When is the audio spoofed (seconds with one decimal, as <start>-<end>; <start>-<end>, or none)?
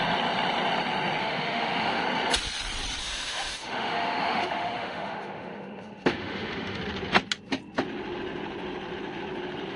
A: 1.2-2.0; 3.0-6.8